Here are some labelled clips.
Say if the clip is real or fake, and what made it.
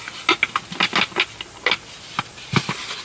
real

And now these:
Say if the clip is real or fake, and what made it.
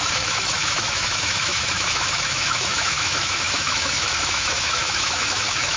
fake, autoencoder, DAC-VAE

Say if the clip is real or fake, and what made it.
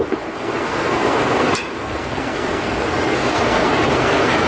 fake, codec, SNAC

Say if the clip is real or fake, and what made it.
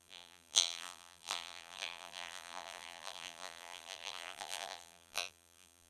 fake, vocoder, BigVGAN v2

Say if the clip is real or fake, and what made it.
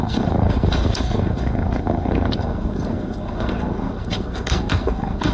fake, codec, SNAC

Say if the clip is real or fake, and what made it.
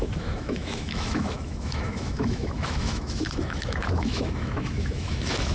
fake, autoencoder, DAC-VAE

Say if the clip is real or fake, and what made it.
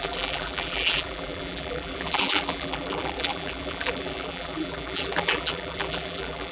fake, vocoder, BigVGAN v2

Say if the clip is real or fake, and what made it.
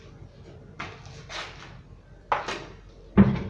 real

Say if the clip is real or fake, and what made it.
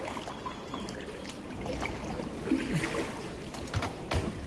real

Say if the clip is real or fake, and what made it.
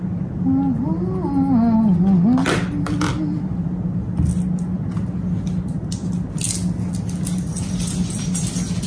real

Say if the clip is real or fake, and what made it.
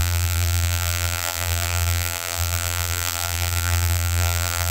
fake, vocoder, BigVGAN v2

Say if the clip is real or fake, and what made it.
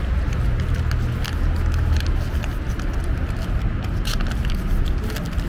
real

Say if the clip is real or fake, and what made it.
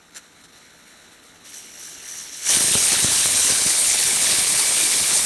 fake, codec, HILCodec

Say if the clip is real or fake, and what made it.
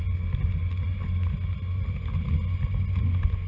real